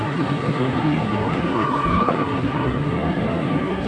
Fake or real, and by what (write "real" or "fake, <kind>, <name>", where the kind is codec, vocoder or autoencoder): fake, codec, SNAC